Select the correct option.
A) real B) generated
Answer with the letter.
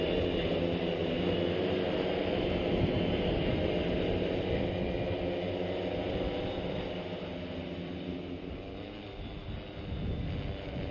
A